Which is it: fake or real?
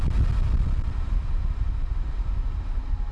real